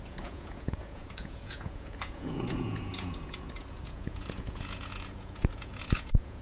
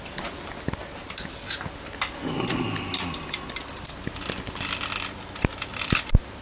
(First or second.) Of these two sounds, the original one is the second